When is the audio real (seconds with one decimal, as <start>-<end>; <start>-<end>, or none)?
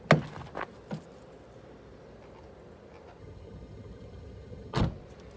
0.0-3.2; 4.8-5.4